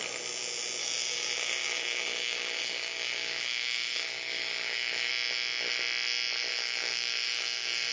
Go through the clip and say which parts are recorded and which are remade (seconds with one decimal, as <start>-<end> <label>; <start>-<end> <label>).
0.0-0.8 recorded; 0.8-5.1 remade; 5.1-6.5 recorded; 6.5-7.9 remade